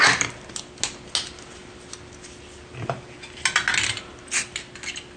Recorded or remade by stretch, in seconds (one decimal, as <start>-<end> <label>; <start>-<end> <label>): 0.0-5.2 recorded